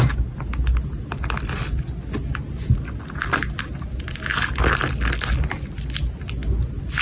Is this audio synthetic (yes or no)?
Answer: no